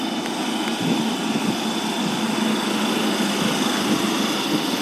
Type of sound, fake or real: real